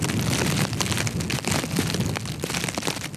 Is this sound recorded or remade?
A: recorded